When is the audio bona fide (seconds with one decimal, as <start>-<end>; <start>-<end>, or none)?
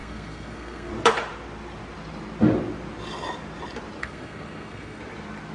0.9-4.0; 5.0-5.5